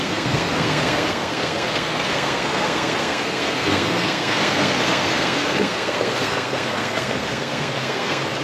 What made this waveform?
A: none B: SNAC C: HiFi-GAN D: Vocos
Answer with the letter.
B